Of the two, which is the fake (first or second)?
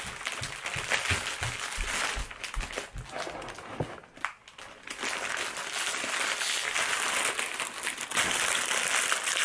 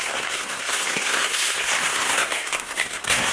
second